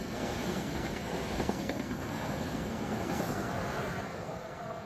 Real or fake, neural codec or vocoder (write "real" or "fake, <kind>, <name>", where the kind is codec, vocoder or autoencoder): fake, codec, SNAC